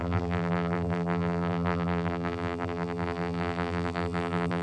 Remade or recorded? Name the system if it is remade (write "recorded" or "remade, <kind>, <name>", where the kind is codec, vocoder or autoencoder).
remade, vocoder, BigVGAN v2